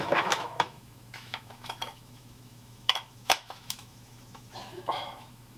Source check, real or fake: fake